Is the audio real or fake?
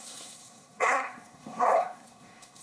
fake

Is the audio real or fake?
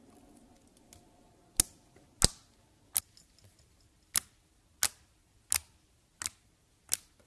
real